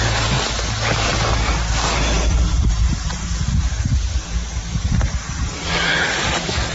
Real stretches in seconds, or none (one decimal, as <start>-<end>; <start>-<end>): 0.0-6.7